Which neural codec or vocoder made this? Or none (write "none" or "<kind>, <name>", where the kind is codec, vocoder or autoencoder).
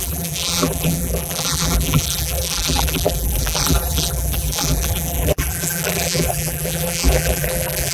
vocoder, BigVGAN v2